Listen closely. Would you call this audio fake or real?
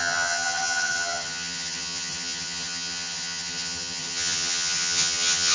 fake